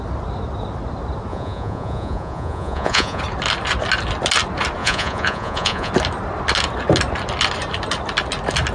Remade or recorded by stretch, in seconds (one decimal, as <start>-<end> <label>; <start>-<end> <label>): 0.0-1.3 recorded; 1.3-3.2 remade; 3.2-4.8 recorded; 4.8-5.9 remade; 5.9-8.7 recorded

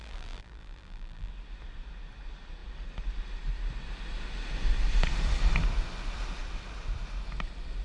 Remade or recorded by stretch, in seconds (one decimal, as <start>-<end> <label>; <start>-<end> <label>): 0.0-1.3 remade; 1.3-7.8 recorded

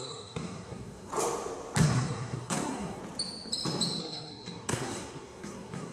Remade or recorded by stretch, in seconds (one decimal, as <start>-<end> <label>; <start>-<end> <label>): 0.0-1.1 remade; 1.1-1.8 recorded; 1.8-3.0 remade; 3.0-4.0 recorded; 4.0-5.9 remade

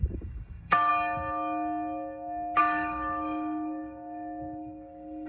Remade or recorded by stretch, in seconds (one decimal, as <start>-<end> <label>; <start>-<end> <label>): 0.0-0.9 remade; 0.9-2.6 recorded; 2.6-5.3 remade

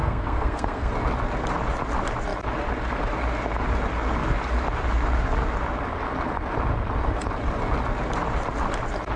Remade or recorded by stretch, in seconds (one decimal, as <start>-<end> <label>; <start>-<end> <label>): 0.0-0.9 remade; 0.9-9.2 recorded

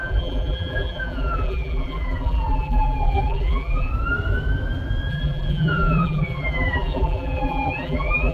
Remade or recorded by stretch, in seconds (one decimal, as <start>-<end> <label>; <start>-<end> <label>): 0.0-3.9 remade; 3.9-5.1 recorded; 5.1-8.3 remade

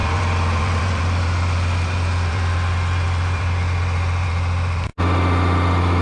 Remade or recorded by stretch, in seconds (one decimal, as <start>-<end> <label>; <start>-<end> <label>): 0.0-4.9 remade; 4.9-6.0 recorded

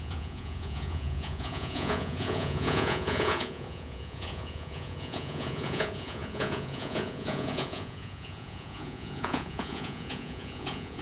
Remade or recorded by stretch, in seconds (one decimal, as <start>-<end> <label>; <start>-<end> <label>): 0.0-11.0 remade